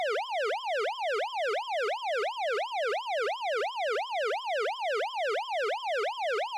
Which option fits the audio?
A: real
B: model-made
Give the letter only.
A